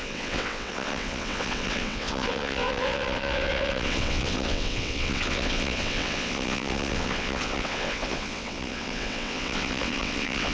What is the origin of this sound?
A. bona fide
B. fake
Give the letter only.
B